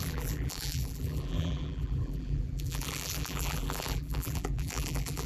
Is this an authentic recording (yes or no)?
no